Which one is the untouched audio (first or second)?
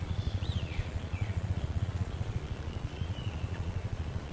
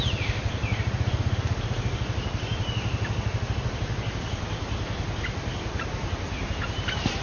second